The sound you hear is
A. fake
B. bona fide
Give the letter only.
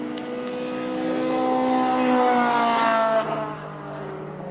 B